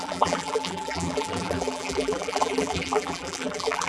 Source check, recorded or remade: remade